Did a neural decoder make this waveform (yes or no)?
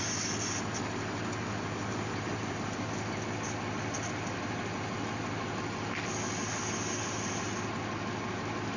no